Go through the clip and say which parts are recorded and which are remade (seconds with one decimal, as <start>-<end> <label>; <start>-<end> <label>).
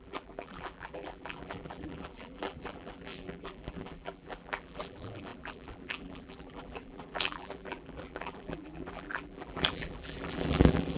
0.0-11.0 remade